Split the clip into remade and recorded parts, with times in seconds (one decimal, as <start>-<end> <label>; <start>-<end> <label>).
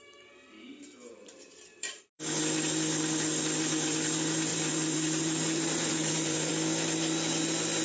0.0-1.7 recorded; 1.7-2.2 remade; 2.2-4.5 recorded; 4.5-6.5 remade; 6.5-7.8 recorded